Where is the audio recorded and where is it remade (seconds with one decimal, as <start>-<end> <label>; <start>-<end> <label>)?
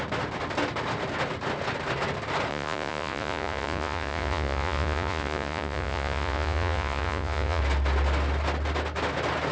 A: 0.0-2.5 recorded; 2.5-7.6 remade; 7.6-9.5 recorded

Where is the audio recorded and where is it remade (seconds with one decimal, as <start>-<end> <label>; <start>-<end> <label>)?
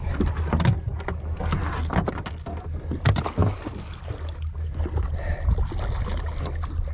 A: 0.0-6.9 recorded